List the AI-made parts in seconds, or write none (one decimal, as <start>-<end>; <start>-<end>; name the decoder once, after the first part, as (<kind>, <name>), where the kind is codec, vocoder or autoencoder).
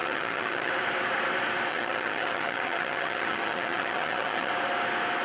0.0-0.7 (vocoder, HiFi-GAN); 1.7-4.5